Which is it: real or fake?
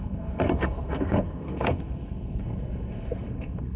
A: fake